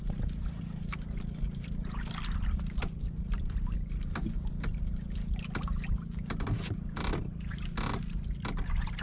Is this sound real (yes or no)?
yes